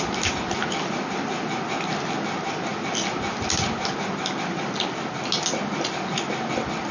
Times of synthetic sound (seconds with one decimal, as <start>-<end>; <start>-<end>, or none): none